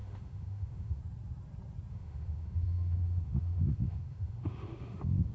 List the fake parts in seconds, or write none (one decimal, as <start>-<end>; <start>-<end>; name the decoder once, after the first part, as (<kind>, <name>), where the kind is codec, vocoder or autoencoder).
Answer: 0.0-1.0 (autoencoder, DAC-VAE); 1.9-5.3